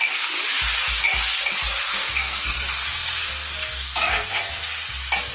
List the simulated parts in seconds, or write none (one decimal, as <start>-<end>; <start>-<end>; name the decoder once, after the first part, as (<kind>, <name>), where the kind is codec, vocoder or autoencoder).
1.9-4.5 (codec, SNAC)